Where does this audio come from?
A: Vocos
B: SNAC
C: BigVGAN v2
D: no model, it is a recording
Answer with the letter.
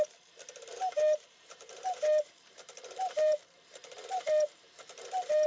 C